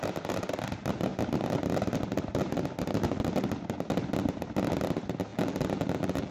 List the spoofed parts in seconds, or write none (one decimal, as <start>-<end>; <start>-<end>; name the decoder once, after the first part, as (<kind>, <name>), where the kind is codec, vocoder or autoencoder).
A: 5.3-6.3 (vocoder, BigVGAN v2)